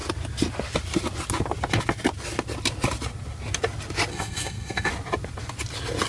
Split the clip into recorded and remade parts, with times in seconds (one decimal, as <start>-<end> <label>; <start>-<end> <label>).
0.0-4.1 recorded; 4.1-4.9 remade; 4.9-6.1 recorded